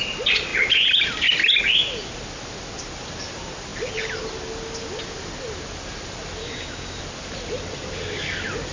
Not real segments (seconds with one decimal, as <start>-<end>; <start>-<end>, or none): 6.4-7.0